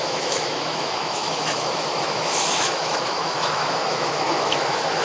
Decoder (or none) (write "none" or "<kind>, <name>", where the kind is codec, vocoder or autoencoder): autoencoder, DAC-VAE